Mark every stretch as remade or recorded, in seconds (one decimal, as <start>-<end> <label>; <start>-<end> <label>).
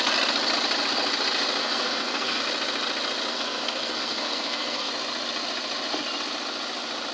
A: 0.0-1.6 recorded; 1.6-2.4 remade; 2.4-3.3 recorded; 3.3-4.9 remade; 4.9-7.1 recorded